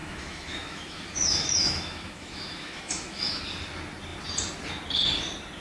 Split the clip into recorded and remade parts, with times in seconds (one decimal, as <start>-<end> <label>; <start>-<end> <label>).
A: 0.0-3.4 remade; 3.4-5.6 recorded